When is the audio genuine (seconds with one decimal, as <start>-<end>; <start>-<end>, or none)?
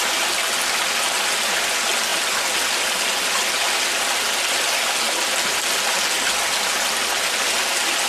0.0-8.1